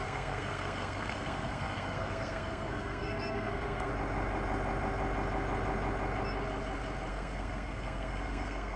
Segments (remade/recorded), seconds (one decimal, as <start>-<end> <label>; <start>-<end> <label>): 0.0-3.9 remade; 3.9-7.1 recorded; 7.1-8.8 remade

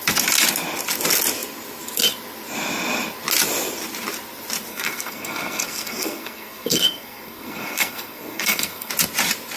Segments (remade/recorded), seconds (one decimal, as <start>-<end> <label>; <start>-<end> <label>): 0.0-4.7 recorded; 4.7-8.9 remade; 8.9-9.6 recorded

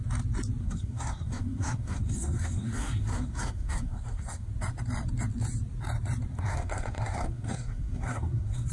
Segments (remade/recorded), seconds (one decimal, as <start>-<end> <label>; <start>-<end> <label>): 0.0-0.6 recorded; 0.6-4.5 remade; 4.5-6.3 recorded; 6.3-8.7 remade

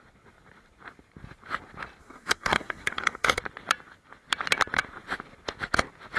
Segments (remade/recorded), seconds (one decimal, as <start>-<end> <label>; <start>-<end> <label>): 0.0-2.0 recorded; 2.0-3.4 remade; 3.4-6.2 recorded

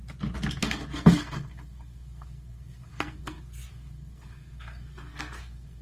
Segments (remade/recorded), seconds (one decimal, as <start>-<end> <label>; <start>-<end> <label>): 0.0-0.6 recorded; 0.6-5.8 remade

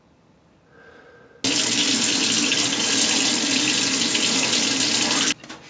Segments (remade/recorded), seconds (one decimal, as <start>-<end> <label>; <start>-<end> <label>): 0.0-5.7 recorded

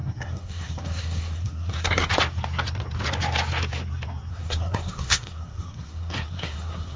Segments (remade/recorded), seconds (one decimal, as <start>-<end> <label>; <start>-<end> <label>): 0.0-2.1 remade; 2.1-4.3 recorded; 4.3-7.0 remade